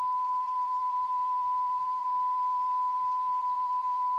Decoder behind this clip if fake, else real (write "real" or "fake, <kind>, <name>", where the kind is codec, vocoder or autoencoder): fake, vocoder, BigVGAN v2